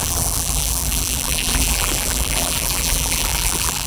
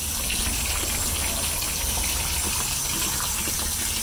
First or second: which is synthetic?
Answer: first